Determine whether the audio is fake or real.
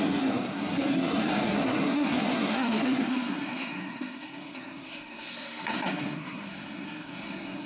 fake